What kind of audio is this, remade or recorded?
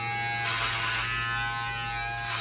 recorded